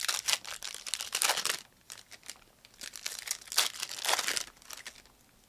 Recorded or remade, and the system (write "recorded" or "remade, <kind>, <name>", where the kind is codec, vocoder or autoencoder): recorded